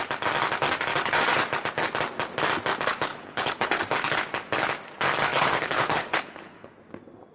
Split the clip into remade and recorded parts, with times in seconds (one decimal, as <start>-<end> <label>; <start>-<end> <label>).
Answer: 0.0-3.1 recorded; 3.1-3.8 remade; 3.8-5.3 recorded; 5.3-6.7 remade; 6.7-7.3 recorded

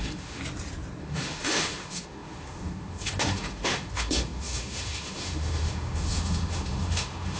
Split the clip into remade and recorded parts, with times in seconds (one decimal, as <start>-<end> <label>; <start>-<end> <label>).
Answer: 0.0-0.4 remade; 0.4-1.0 recorded; 1.0-7.4 remade